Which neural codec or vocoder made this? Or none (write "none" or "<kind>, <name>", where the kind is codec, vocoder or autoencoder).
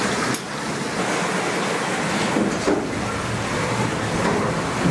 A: none